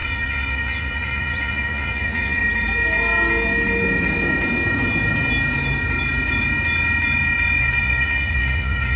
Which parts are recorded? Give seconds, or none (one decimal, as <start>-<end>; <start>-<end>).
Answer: 2.4-7.6